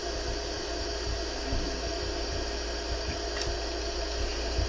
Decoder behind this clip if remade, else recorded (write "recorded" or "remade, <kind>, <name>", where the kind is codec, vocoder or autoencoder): recorded